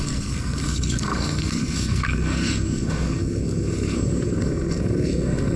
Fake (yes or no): yes